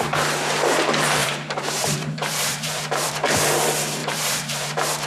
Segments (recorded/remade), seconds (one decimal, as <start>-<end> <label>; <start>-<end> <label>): 0.0-1.2 recorded; 1.2-3.1 remade; 3.1-4.0 recorded; 4.0-5.1 remade